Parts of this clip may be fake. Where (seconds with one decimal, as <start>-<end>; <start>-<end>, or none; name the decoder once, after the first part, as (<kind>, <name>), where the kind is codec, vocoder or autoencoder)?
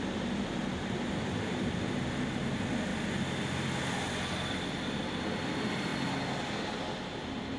0.0-2.9 (vocoder, BigVGAN v2); 4.2-5.9; 7.0-7.6